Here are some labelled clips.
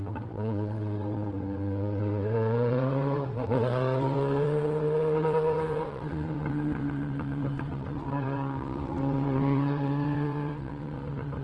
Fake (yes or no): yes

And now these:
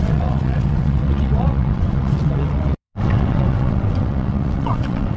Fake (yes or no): yes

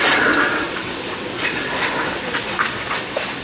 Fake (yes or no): yes